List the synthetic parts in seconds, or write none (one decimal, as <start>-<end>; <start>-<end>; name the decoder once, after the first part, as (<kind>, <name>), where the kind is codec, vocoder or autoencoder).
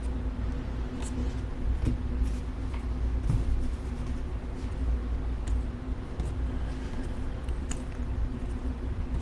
8.2-9.2 (vocoder, Vocos)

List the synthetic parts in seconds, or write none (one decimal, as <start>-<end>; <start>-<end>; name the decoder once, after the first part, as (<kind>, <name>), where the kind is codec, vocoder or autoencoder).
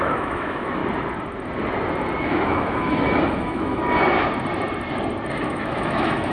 0.0-0.8 (autoencoder, DAC-VAE); 2.2-3.8; 5.3-6.3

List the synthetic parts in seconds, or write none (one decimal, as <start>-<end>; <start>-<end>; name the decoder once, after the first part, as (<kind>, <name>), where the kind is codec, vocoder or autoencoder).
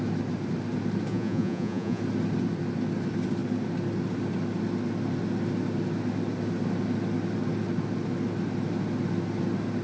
1.1-2.0 (vocoder, Vocos)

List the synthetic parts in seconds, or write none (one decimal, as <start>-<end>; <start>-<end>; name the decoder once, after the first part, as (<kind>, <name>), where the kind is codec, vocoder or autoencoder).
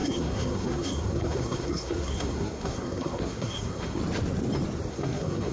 0.0-4.0 (codec, SNAC); 4.9-5.5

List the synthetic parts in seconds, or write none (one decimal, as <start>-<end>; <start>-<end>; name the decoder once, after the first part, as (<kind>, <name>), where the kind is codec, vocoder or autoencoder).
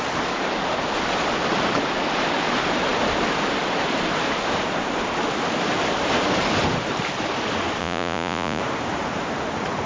7.8-8.6 (vocoder, Vocos)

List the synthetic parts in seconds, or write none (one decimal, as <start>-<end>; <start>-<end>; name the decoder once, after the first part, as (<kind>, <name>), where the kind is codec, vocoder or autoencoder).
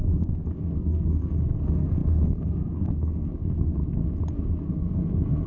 0.0-3.8 (codec, SNAC); 4.7-5.5